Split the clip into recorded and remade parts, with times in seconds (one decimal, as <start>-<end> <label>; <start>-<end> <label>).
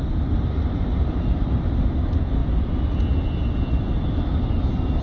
0.0-5.0 recorded